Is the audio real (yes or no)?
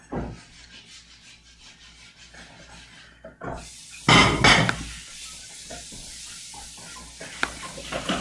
yes